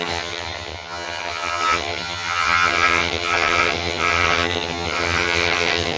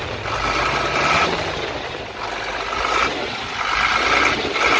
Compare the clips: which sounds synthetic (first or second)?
first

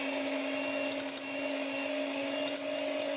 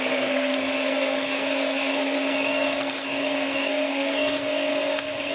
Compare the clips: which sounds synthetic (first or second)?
second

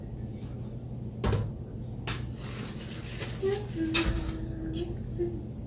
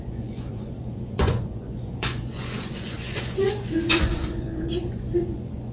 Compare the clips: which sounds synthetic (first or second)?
second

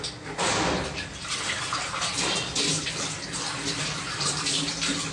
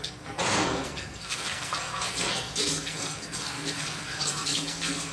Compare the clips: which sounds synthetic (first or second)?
second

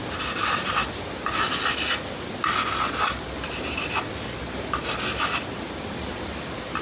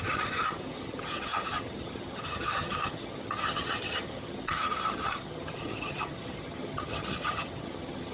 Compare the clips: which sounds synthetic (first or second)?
second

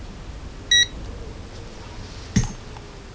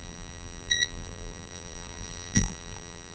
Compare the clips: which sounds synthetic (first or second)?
second